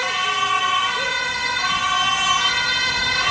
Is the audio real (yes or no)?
yes